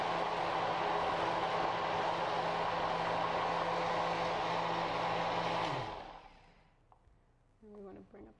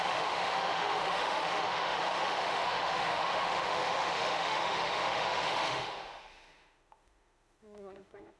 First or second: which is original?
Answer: first